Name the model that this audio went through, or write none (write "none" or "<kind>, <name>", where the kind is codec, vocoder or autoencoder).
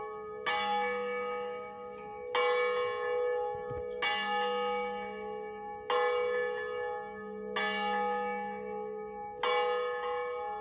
none